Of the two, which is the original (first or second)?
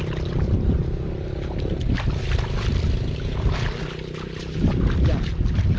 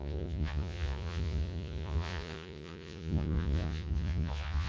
first